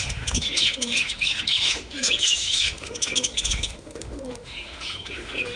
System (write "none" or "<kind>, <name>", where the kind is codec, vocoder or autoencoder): autoencoder, DAC-VAE